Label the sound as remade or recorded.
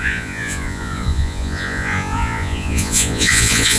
remade